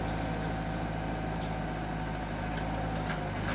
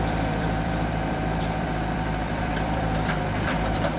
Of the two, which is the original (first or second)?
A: first